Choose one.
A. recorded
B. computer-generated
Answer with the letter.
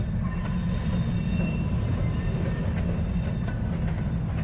A